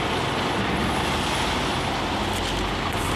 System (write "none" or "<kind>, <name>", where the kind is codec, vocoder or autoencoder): none